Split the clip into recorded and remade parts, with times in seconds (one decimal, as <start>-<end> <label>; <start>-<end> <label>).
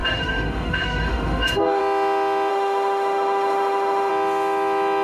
0.0-1.8 remade; 1.8-2.5 recorded; 2.5-4.1 remade; 4.1-5.0 recorded